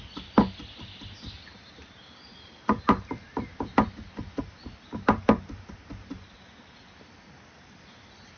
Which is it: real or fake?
real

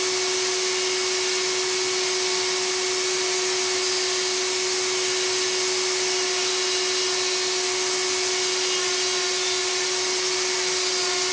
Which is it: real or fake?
real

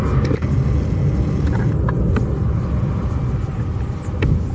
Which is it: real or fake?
real